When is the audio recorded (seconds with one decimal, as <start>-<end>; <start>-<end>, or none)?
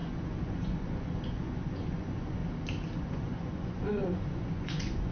2.4-3.0